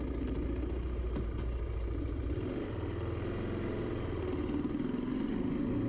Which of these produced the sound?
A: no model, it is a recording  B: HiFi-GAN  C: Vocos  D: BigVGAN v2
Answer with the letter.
A